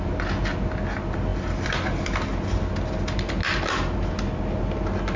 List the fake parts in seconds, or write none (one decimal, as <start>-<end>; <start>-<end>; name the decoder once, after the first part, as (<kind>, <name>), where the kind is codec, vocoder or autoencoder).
none